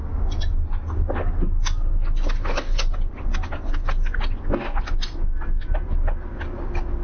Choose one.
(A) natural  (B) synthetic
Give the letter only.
A